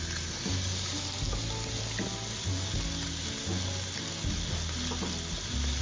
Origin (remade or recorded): recorded